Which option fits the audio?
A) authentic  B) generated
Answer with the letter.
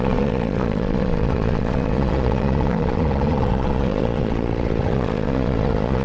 B